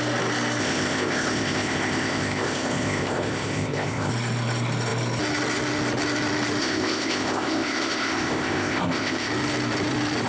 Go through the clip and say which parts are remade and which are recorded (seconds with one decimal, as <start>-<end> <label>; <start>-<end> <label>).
0.0-0.6 recorded; 0.6-4.1 remade; 4.1-6.6 recorded; 6.6-9.3 remade; 9.3-10.3 recorded

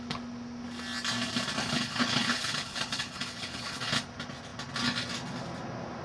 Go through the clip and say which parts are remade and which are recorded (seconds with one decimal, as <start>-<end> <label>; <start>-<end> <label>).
0.0-1.6 recorded; 1.6-4.0 remade; 4.0-6.0 recorded

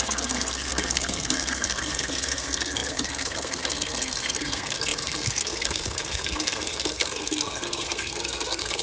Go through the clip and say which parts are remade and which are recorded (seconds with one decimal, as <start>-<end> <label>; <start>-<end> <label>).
0.0-8.8 remade

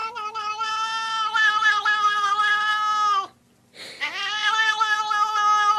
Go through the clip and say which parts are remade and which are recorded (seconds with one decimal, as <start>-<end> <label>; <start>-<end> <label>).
0.0-0.7 remade; 0.7-4.4 recorded; 4.4-5.0 remade; 5.0-5.8 recorded

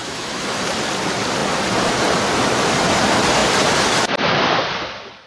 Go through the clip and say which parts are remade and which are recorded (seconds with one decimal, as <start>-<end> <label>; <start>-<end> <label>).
0.0-0.6 remade; 0.6-5.3 recorded